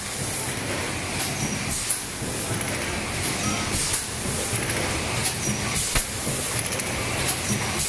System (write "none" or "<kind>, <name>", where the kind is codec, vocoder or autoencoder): none